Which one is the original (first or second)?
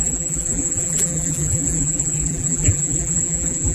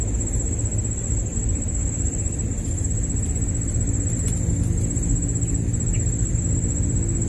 second